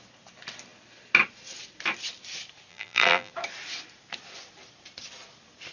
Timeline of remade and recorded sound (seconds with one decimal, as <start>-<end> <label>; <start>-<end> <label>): 0.0-2.7 recorded; 2.7-3.3 remade; 3.3-5.7 recorded